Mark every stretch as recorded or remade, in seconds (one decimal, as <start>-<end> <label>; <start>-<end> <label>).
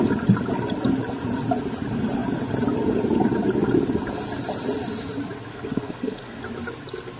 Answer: 0.0-5.5 recorded; 5.5-6.4 remade; 6.4-7.2 recorded